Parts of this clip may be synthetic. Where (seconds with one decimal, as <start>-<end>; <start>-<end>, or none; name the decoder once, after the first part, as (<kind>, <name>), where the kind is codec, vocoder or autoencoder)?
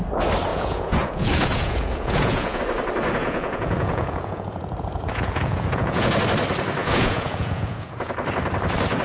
0.5-2.6 (vocoder, Vocos); 3.2-6.2; 6.8-8.1